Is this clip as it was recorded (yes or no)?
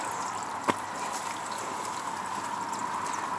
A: yes